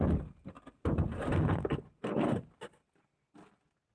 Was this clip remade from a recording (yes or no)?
no